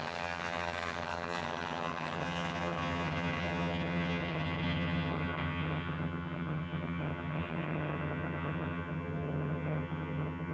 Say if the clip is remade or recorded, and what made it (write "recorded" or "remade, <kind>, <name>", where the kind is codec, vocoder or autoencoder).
remade, vocoder, HiFi-GAN